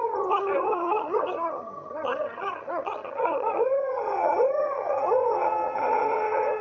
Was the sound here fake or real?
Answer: fake